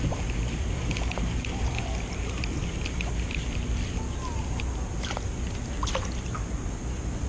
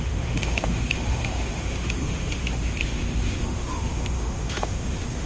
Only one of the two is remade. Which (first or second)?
second